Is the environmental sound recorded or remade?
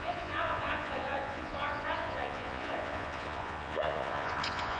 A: remade